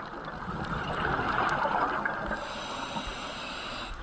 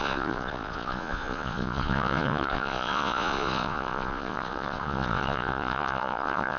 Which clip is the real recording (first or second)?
first